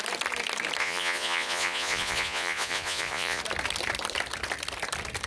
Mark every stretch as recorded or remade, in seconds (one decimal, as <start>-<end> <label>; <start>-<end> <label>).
0.0-0.8 recorded; 0.8-3.4 remade; 3.4-5.3 recorded